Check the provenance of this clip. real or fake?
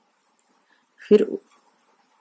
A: real